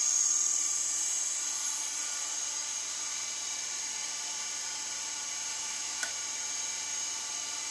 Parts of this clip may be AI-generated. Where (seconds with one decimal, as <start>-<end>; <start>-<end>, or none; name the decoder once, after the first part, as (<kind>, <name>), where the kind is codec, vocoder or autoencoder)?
5.5-6.1 (autoencoder, DAC-VAE)